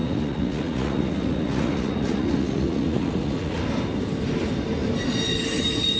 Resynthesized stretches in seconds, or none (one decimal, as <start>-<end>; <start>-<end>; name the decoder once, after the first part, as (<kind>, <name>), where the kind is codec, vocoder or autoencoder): 0.0-3.6 (vocoder, Vocos)